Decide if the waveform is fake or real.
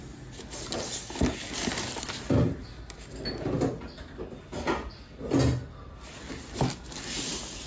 real